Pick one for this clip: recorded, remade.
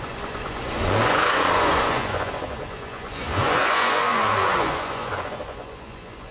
remade